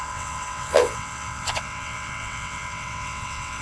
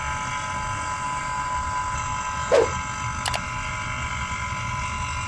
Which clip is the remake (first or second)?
first